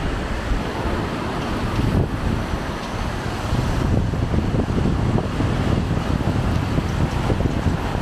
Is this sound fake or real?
real